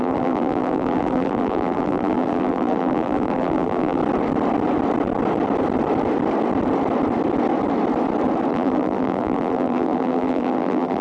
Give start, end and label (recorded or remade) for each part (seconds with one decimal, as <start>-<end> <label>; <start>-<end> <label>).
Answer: 0.0-4.0 remade; 4.0-8.5 recorded; 8.5-11.0 remade